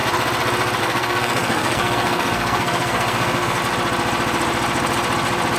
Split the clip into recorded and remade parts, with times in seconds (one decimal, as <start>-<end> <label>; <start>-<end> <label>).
0.0-0.8 recorded; 0.8-3.6 remade; 3.6-5.6 recorded